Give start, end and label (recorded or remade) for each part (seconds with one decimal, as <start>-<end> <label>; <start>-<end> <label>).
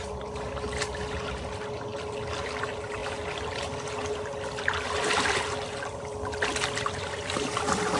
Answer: 0.0-8.0 recorded